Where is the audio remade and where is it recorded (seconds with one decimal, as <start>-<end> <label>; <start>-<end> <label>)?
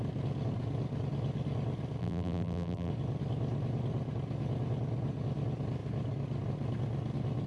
0.0-2.0 recorded; 2.0-2.9 remade; 2.9-7.5 recorded